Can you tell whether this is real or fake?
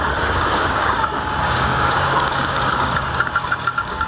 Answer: fake